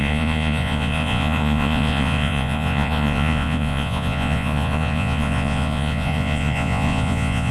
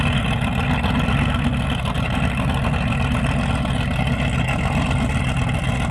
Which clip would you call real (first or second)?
second